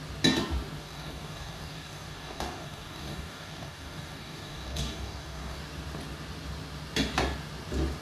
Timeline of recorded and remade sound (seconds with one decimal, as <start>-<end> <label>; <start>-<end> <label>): 0.0-0.8 recorded; 0.8-5.6 remade; 5.6-8.0 recorded